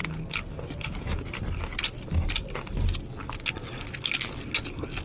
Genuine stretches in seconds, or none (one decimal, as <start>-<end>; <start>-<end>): 0.0-5.0